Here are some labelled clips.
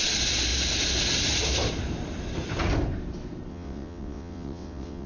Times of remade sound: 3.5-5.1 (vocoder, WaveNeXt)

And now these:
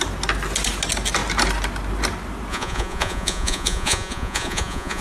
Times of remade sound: 2.5-5.0 (vocoder, Vocos)

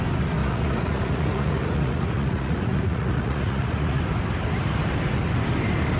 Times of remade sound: 0.4-4.0 (vocoder, Vocos)

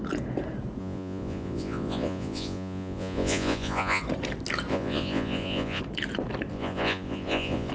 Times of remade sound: 0.8-4.0 (vocoder, Vocos); 4.7-5.8; 6.5-7.7

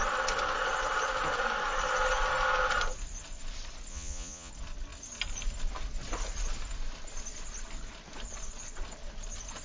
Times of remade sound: 3.9-4.5 (vocoder, Vocos)

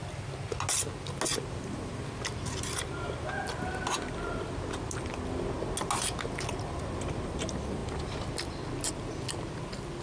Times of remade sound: none

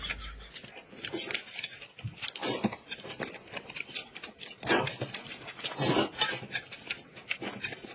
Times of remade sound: none